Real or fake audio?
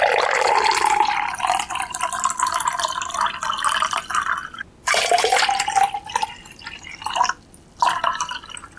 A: real